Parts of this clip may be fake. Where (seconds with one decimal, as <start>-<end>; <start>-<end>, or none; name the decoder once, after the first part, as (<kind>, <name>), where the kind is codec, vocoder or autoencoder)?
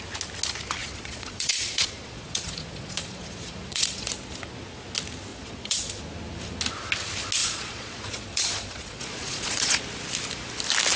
0.8-4.1 (vocoder, Vocos); 5.3-6.0; 7.4-9.8